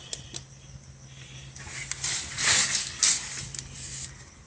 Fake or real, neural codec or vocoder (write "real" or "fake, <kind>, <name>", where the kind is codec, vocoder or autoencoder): real